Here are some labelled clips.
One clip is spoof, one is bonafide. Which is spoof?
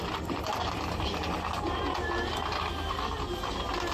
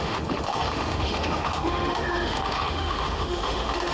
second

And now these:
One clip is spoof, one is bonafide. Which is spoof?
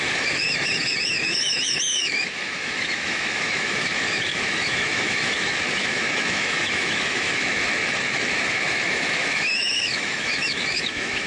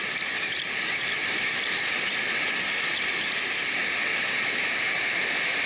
first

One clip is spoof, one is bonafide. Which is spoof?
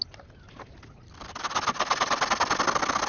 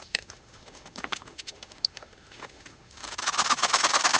second